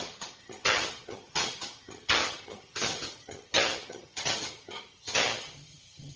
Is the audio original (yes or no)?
no